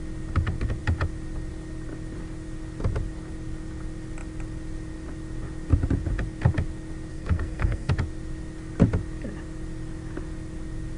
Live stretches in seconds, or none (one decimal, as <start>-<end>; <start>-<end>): 0.0-7.1; 7.9-11.0